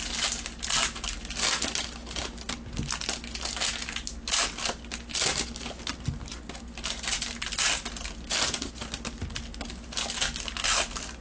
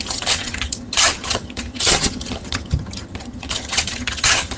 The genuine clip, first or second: first